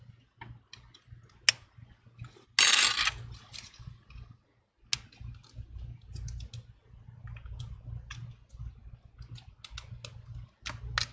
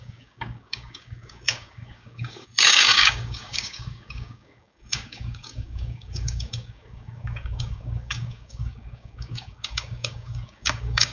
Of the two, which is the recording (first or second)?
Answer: first